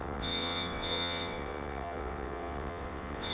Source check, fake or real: fake